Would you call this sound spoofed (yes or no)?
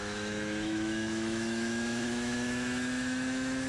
yes